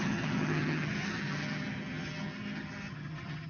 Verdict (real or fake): fake